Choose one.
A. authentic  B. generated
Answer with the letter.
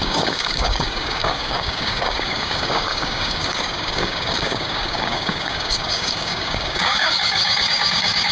B